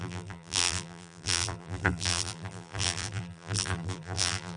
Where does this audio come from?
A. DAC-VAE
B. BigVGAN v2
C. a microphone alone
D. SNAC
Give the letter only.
B